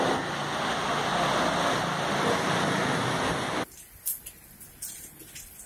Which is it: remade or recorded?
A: recorded